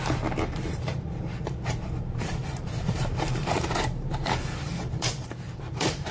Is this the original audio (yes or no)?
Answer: no